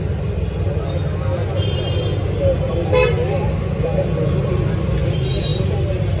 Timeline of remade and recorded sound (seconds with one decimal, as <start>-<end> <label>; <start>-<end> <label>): 0.0-6.2 recorded